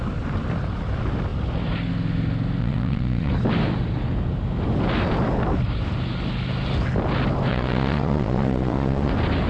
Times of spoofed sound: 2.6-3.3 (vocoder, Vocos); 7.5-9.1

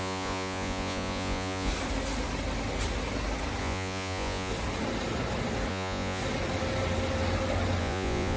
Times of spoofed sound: 0.0-1.7 (vocoder, Vocos); 3.6-4.5; 5.7-6.2; 7.8-8.4

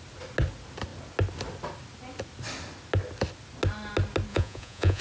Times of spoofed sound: 4.3-5.0 (vocoder, Vocos)

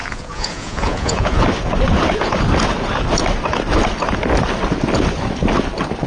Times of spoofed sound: 0.0-1.4 (vocoder, Vocos)

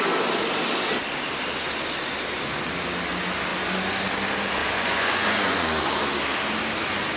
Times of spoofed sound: 4.6-6.0 (vocoder, Vocos)

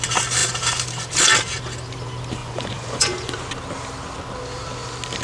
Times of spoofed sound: 2.4-3.5 (vocoder, Vocos)

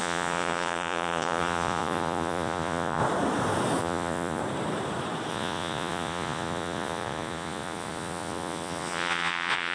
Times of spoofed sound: 0.0-3.0 (vocoder, Vocos); 3.8-4.4; 5.3-9.7

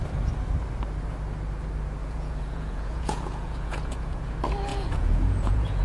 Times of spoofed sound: 2.0-4.2 (vocoder, Vocos); 4.7-5.8